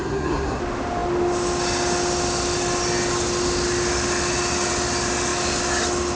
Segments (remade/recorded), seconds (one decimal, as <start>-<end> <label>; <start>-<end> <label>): 0.0-0.6 remade; 0.6-6.2 recorded